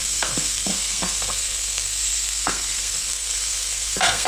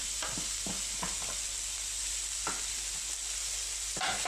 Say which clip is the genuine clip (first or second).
second